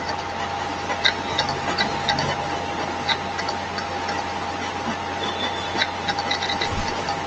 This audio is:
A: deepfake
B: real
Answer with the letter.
B